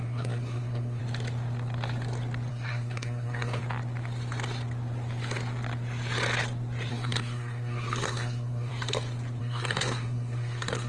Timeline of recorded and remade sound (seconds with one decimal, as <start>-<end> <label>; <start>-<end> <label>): 0.0-1.0 remade; 1.0-2.5 recorded; 2.5-3.6 remade; 3.6-6.9 recorded; 6.9-8.7 remade; 8.7-9.4 recorded; 9.4-10.9 remade